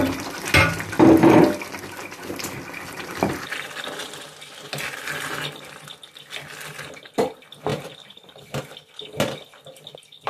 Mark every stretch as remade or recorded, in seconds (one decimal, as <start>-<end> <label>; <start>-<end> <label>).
0.0-7.7 recorded; 7.7-8.6 remade; 8.6-10.3 recorded